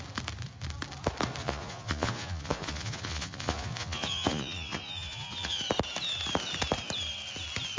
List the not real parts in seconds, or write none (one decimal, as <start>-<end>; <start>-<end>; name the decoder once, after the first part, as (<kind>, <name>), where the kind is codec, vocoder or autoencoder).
1.4-5.6 (vocoder, Vocos)